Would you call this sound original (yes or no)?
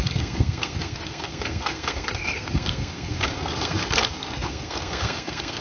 no